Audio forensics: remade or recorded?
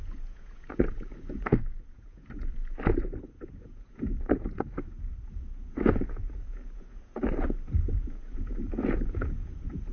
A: remade